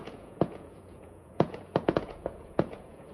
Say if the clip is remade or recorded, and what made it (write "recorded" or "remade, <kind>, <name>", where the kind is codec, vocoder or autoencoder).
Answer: remade, vocoder, Vocos